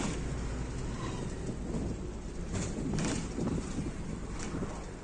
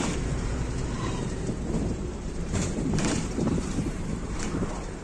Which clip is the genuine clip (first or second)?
first